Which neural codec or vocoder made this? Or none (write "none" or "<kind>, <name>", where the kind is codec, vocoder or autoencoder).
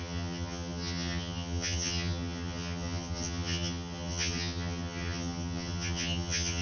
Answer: vocoder, HiFi-GAN